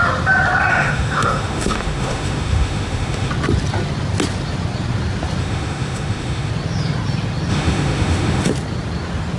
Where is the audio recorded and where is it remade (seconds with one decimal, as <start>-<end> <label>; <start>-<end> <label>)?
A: 0.0-0.7 recorded; 0.7-3.3 remade; 3.3-5.4 recorded; 5.4-6.5 remade; 6.5-7.5 recorded; 7.5-8.5 remade; 8.5-9.4 recorded